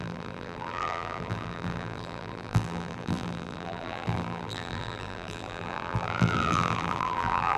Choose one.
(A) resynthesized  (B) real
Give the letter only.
A